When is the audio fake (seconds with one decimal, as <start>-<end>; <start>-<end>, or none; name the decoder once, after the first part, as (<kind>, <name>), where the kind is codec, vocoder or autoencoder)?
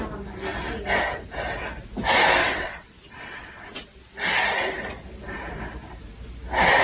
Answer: 2.4-4.0 (vocoder, WaveNeXt)